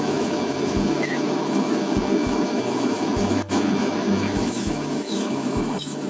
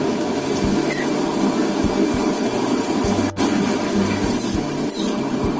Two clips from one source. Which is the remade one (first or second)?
first